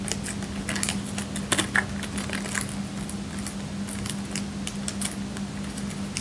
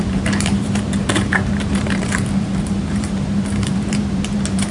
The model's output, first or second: second